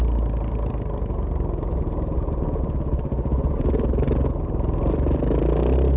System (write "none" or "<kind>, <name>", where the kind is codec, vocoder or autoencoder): none